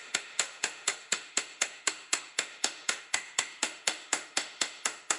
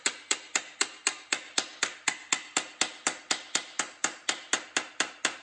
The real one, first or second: second